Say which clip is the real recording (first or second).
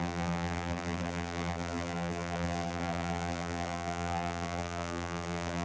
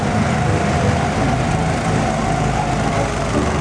second